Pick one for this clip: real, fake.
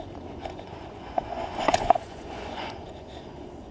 fake